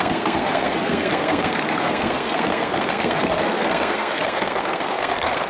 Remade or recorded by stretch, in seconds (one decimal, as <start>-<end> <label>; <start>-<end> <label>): 0.0-5.5 remade